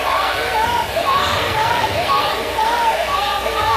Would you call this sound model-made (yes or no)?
yes